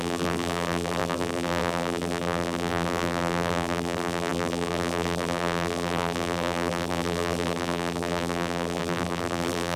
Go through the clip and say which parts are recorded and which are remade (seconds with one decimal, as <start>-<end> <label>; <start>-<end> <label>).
0.0-9.8 remade

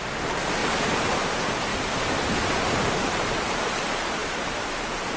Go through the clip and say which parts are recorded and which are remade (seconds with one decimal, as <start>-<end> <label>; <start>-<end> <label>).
0.0-0.6 recorded; 0.6-1.1 remade; 1.1-1.7 recorded; 1.7-3.6 remade; 3.6-4.2 recorded; 4.2-5.2 remade